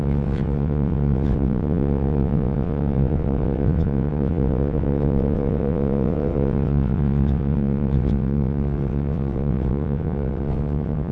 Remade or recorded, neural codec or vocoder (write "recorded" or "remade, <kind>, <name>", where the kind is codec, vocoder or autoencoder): remade, vocoder, WaveNeXt